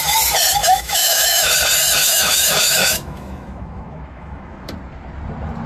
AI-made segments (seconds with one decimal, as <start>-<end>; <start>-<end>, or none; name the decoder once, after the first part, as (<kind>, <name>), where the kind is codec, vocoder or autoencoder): 0.6-1.5 (autoencoder, DAC-VAE); 2.0-4.7